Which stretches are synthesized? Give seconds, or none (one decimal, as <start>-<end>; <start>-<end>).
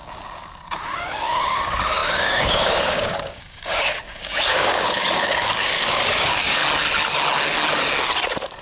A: 0.0-6.6